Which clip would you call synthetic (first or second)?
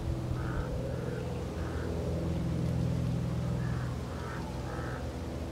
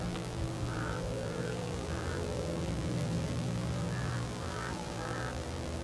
second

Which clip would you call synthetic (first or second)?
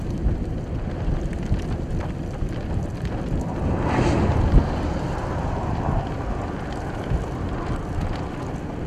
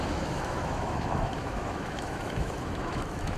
second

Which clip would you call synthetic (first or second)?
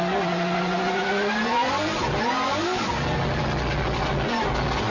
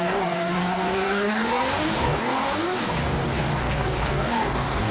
second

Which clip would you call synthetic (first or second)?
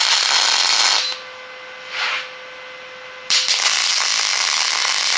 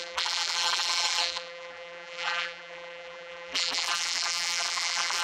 second